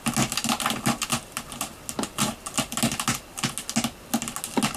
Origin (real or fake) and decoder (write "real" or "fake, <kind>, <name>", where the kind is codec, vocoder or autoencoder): real